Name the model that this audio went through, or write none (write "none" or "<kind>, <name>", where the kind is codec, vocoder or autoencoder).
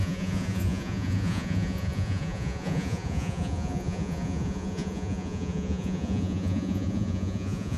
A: vocoder, Vocos